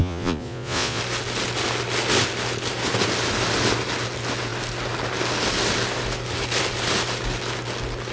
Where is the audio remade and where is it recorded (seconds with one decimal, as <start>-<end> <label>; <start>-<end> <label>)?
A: 0.0-1.0 remade; 1.0-8.1 recorded